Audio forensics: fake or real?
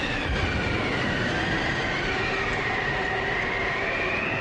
real